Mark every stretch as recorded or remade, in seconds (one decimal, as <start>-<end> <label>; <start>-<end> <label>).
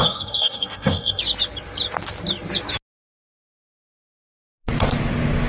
0.0-1.2 remade; 1.2-5.5 recorded